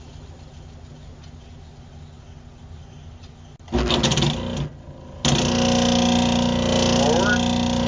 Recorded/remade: recorded